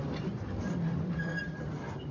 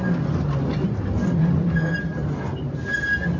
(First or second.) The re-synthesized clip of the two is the first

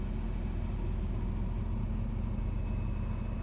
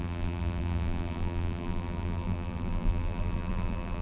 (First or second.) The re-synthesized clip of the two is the second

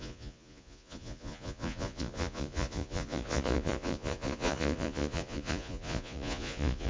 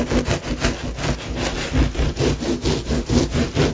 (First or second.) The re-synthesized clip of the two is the first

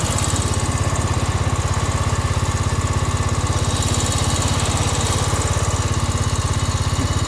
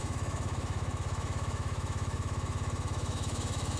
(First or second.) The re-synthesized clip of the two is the second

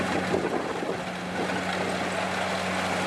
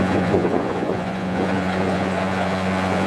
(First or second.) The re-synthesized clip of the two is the second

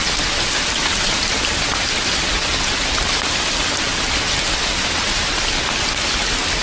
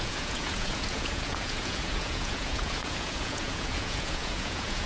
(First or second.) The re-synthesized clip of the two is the second